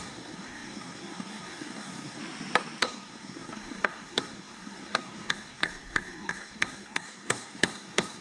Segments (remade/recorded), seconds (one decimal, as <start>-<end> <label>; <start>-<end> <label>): 0.0-2.2 remade; 2.2-2.8 recorded; 2.8-8.2 remade